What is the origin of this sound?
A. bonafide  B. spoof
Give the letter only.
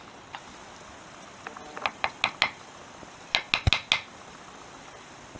A